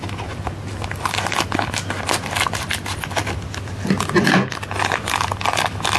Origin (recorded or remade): recorded